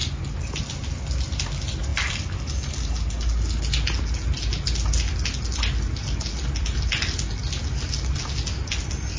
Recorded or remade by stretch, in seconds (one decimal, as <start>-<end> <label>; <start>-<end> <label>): 0.0-9.2 recorded